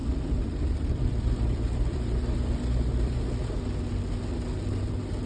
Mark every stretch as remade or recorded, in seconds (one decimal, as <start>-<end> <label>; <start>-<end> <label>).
0.0-3.2 remade; 3.2-5.3 recorded

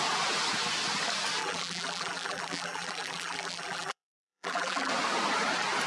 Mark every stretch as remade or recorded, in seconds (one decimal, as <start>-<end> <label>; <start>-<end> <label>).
0.0-1.4 recorded; 1.4-4.9 remade; 4.9-5.9 recorded

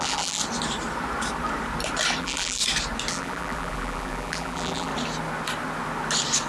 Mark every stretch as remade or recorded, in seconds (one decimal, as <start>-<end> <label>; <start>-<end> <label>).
0.0-0.4 remade; 0.4-2.2 recorded; 2.2-2.6 remade; 2.6-3.1 recorded; 3.1-4.9 remade; 4.9-6.5 recorded

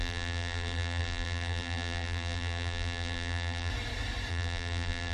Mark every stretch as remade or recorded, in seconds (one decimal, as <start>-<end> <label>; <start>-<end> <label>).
0.0-3.7 remade; 3.7-4.3 recorded; 4.3-5.1 remade

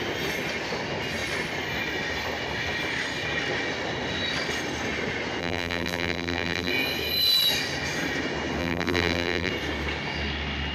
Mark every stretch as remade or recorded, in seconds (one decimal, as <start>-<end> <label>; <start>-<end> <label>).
0.0-5.4 recorded; 5.4-6.7 remade; 6.7-8.6 recorded; 8.6-9.5 remade; 9.5-10.7 recorded